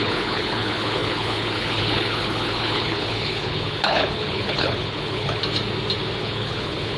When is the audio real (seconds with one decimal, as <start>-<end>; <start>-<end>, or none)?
5.4-6.2